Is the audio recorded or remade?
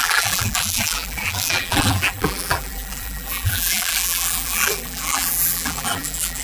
remade